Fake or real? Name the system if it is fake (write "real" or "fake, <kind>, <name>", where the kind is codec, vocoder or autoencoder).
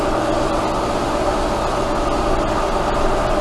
real